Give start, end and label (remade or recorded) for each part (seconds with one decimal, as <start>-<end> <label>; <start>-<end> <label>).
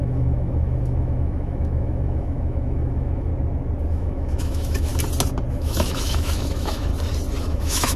0.0-3.3 remade; 3.3-3.9 recorded; 3.9-4.9 remade; 4.9-5.5 recorded; 5.5-6.9 remade; 6.9-7.4 recorded; 7.4-8.0 remade